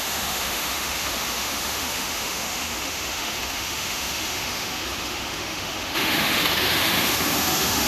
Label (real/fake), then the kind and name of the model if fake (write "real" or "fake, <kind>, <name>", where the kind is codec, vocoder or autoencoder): fake, autoencoder, DAC-VAE